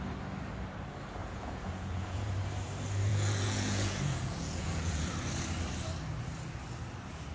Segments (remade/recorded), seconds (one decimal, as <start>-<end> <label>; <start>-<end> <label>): 0.0-1.2 recorded; 1.2-2.3 remade; 2.3-3.1 recorded; 3.1-5.1 remade; 5.1-7.3 recorded